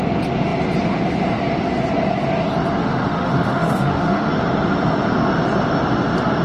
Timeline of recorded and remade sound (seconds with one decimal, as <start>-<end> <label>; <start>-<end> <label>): 0.0-2.8 recorded; 2.8-4.3 remade; 4.3-6.4 recorded